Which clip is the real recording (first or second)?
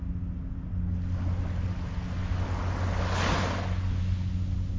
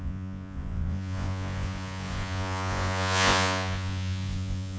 first